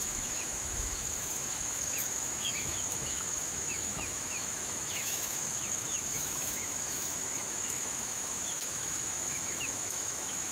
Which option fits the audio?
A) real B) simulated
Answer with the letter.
B